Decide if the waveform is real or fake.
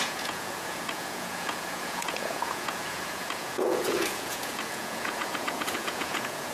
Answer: fake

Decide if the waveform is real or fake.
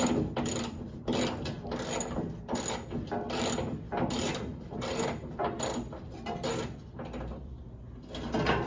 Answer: real